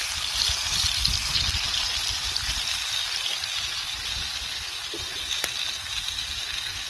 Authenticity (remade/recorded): recorded